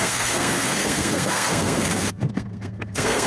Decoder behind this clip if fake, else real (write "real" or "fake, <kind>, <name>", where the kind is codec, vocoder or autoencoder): fake, codec, SNAC